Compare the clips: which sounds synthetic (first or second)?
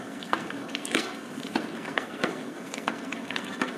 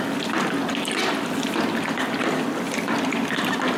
first